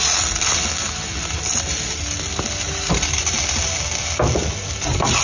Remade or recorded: recorded